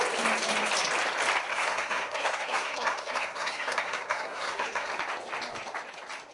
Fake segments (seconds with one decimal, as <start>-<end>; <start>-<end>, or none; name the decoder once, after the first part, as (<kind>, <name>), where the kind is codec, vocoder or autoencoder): 1.5-4.9 (codec, SNAC)